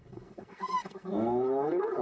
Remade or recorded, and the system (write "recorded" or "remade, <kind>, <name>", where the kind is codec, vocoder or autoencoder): remade, codec, SNAC